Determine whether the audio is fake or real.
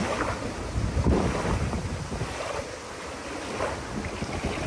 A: real